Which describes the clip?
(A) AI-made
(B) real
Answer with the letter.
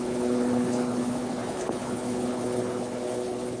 A